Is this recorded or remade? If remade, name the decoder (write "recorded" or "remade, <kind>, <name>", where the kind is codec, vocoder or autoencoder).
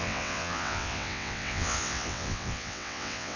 remade, vocoder, WaveNeXt